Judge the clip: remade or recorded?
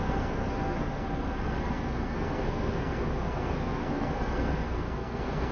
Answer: remade